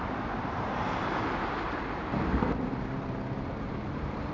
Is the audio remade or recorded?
remade